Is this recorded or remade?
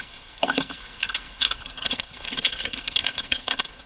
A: remade